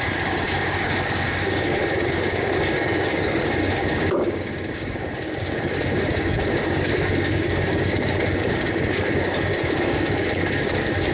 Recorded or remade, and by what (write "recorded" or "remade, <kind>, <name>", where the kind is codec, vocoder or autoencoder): remade, codec, DAC